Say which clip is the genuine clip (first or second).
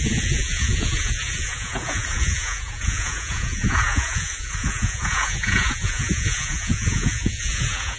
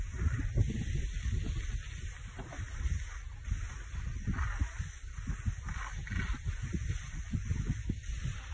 second